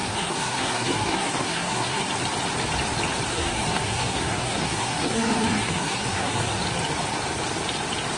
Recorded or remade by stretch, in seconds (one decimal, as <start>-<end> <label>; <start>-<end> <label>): 0.0-2.1 remade; 2.1-3.3 recorded; 3.3-6.6 remade; 6.6-8.2 recorded